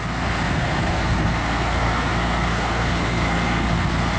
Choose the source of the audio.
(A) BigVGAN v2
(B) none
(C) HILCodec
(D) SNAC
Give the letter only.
D